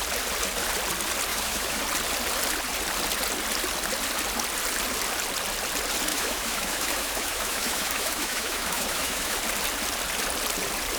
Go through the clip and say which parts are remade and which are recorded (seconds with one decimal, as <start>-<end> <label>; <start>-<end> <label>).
0.0-1.3 recorded; 1.3-1.8 remade; 1.8-6.1 recorded; 6.1-9.4 remade; 9.4-11.0 recorded